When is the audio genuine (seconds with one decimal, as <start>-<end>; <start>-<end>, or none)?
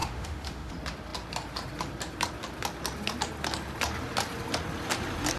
0.7-5.4